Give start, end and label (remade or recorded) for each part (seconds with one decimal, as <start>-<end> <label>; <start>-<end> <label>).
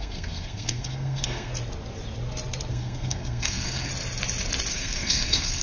0.0-1.5 remade; 1.5-2.7 recorded; 2.7-3.9 remade; 3.9-4.7 recorded; 4.7-5.6 remade